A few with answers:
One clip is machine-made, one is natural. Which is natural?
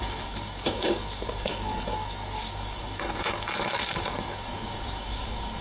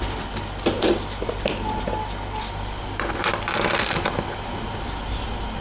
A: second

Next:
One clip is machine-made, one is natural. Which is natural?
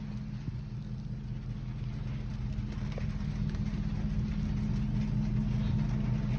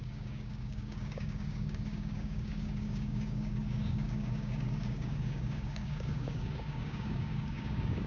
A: first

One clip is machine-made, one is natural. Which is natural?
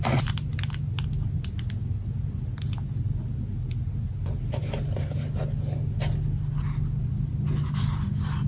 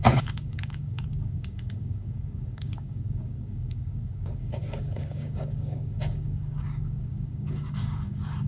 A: first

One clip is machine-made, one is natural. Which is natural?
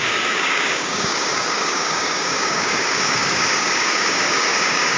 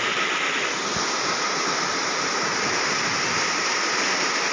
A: second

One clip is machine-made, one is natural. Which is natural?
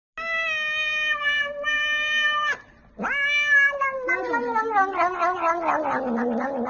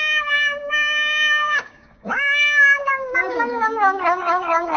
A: first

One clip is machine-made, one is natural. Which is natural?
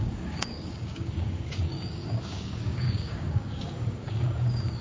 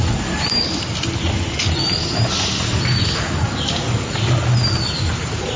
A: second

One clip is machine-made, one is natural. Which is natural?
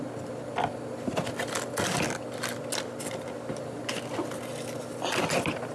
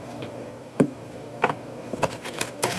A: first